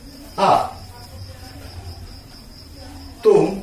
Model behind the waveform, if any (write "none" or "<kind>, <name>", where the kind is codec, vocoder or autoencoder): vocoder, BigVGAN v2